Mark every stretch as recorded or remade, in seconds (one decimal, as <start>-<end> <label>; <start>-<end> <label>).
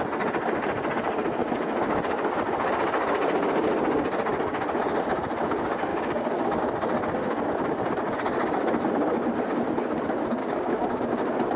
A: 0.0-5.9 recorded; 5.9-6.6 remade; 6.6-10.4 recorded; 10.4-11.2 remade; 11.2-11.6 recorded